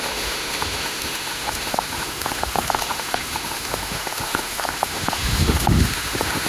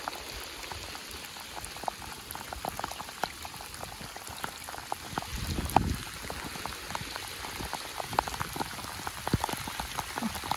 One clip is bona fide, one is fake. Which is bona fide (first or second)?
second